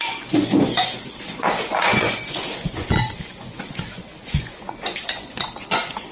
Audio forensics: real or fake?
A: fake